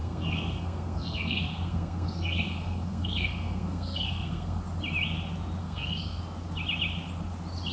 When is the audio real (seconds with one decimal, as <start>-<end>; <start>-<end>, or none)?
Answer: 4.6-5.6; 6.2-7.7